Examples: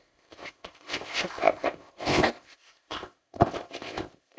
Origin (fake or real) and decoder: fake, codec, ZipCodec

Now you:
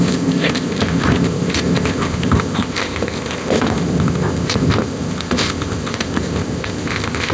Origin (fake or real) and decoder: fake, codec, ZipCodec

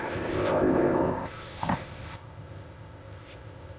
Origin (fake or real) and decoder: fake, codec, ZipCodec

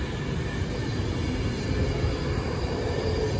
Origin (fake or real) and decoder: real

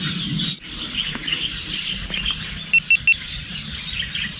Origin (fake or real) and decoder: real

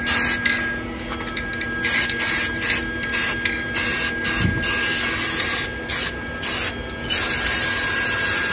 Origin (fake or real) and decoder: real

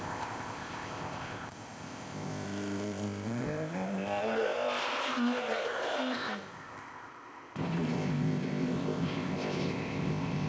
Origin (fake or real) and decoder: fake, codec, ZipCodec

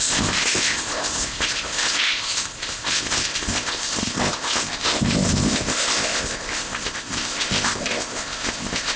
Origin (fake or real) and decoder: fake, codec, ZipCodec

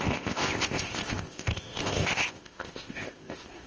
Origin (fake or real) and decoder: fake, codec, ZipCodec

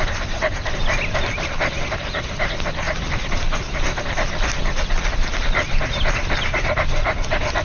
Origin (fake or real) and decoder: real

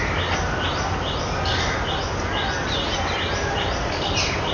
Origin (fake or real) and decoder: real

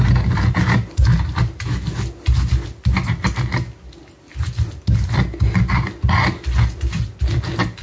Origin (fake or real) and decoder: real